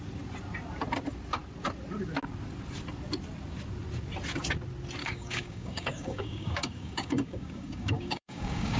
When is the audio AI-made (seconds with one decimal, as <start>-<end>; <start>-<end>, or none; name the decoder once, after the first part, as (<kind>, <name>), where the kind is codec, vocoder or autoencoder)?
5.0-8.8 (codec, DAC)